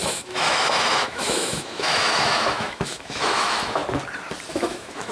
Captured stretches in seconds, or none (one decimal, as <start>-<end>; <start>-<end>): 3.8-4.5